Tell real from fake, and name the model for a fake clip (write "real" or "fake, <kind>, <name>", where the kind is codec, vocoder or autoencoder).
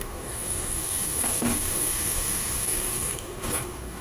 fake, codec, DAC